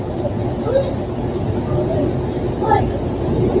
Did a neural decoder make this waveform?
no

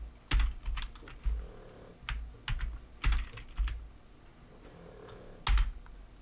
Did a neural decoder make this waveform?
no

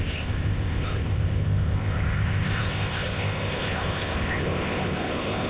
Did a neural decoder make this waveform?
yes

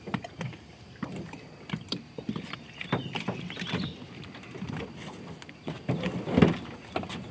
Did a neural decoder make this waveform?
no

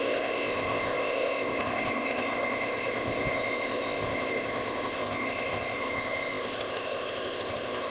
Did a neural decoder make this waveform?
yes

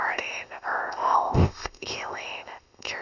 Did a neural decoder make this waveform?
yes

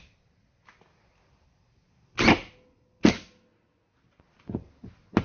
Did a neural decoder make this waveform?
no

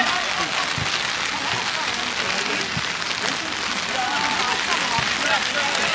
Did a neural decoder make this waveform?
no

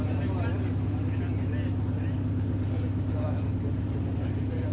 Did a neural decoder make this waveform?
no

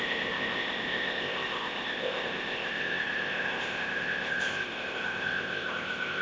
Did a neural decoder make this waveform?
yes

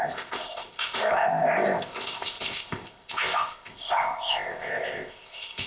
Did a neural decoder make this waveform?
yes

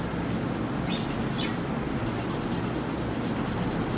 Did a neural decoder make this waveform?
no